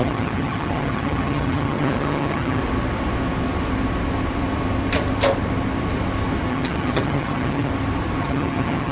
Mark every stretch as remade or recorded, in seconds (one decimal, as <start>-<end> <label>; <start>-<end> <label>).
0.0-2.6 remade; 2.6-6.5 recorded; 6.5-7.7 remade; 7.7-8.2 recorded; 8.2-8.9 remade